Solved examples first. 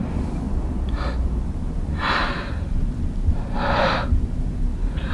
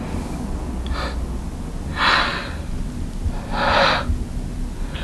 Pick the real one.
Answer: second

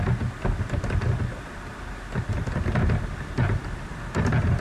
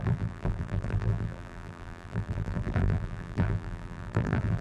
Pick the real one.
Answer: first